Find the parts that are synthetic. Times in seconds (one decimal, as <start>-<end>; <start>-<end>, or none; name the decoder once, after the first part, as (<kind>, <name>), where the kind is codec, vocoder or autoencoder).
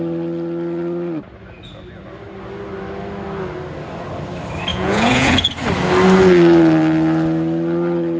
4.7-5.5 (vocoder, Vocos)